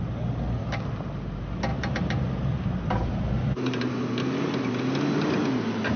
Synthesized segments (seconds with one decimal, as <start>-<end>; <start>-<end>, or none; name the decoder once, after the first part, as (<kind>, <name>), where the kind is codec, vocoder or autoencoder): 1.7-4.2 (vocoder, BigVGAN v2)